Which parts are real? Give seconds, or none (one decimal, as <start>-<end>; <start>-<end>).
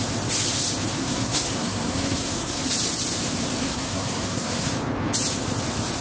0.0-1.0; 2.6-3.6; 4.7-6.0